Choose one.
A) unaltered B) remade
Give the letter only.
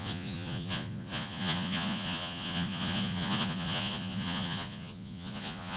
B